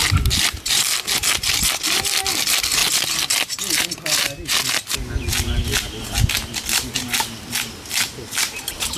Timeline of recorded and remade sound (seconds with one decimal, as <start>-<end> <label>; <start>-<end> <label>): 0.0-9.0 recorded

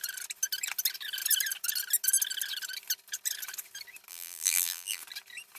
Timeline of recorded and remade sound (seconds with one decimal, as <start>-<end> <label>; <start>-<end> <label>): 0.0-4.1 recorded; 4.1-5.0 remade; 5.0-5.6 recorded

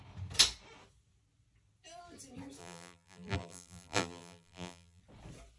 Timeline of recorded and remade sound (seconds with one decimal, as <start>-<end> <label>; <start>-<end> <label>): 0.0-2.6 recorded; 2.6-5.0 remade; 5.0-5.6 recorded

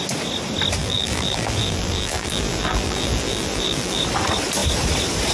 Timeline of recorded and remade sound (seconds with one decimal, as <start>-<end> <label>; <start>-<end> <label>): 0.0-0.8 recorded; 0.8-4.0 remade; 4.0-5.3 recorded

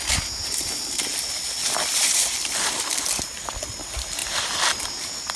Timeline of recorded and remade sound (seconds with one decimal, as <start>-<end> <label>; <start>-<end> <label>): 0.0-1.1 recorded; 1.1-3.1 remade; 3.1-5.4 recorded

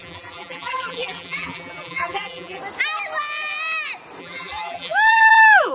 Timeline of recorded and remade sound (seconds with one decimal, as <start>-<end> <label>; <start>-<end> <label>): 0.0-2.6 remade; 2.6-4.2 recorded; 4.2-5.7 remade

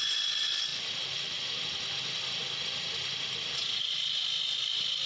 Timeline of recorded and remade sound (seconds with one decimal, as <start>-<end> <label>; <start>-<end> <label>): 0.0-5.1 recorded